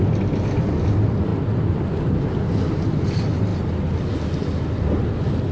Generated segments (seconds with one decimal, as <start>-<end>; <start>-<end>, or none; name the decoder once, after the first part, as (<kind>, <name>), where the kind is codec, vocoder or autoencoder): none